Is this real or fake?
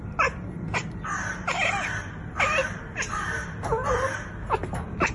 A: real